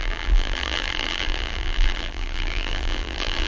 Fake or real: fake